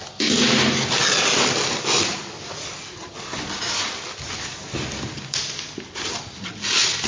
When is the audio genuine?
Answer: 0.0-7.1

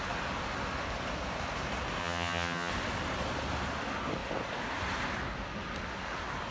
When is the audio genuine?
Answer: 0.0-2.0; 2.7-6.5